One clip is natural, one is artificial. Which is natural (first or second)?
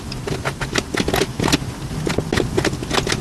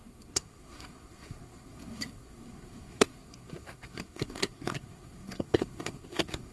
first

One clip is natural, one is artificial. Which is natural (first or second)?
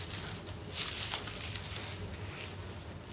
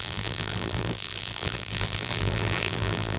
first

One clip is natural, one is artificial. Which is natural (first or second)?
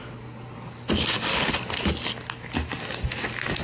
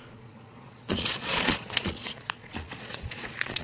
first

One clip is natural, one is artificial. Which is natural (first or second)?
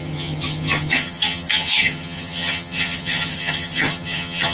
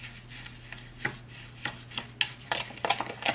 second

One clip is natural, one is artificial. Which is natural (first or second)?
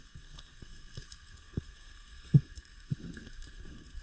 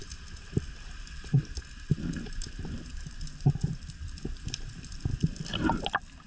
second